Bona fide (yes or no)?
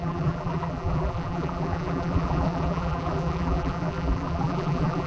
no